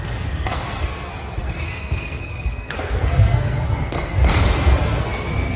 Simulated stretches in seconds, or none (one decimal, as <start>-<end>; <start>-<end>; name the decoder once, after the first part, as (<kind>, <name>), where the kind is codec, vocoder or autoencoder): 0.0-5.6 (codec, SNAC)